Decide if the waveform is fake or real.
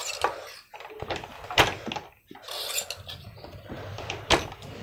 real